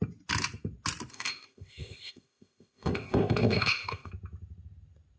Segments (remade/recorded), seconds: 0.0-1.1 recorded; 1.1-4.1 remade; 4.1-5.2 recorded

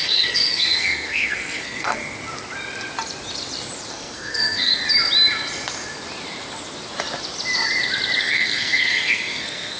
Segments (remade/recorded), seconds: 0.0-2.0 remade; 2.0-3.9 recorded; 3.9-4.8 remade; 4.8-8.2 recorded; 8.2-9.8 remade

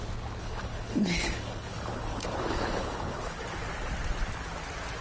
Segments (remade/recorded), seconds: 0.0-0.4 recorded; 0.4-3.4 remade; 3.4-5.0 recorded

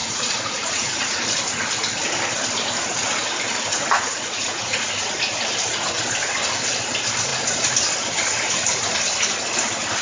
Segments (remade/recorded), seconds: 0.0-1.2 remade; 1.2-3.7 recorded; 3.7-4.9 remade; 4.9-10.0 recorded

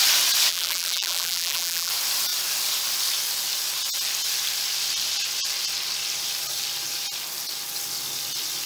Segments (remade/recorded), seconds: 0.0-0.5 recorded; 0.5-1.9 remade; 1.9-8.7 recorded

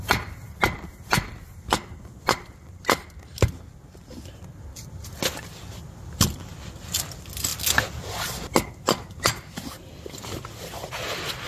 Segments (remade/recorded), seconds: 0.0-11.5 recorded